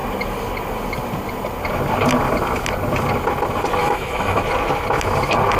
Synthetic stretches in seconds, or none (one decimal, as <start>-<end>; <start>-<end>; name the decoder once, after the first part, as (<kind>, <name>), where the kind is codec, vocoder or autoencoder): 3.8-4.4 (autoencoder, DAC-VAE)